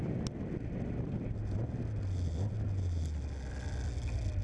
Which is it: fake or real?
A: real